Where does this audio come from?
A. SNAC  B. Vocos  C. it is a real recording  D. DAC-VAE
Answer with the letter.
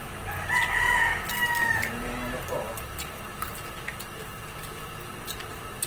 C